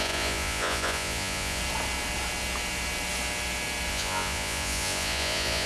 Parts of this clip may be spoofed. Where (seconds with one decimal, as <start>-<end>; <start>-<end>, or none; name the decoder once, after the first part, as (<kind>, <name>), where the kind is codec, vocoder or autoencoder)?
0.0-1.6 (vocoder, Vocos); 3.9-5.7